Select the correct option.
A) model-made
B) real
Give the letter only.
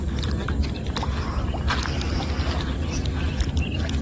B